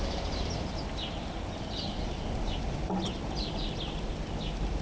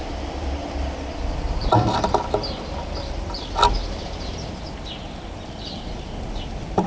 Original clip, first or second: first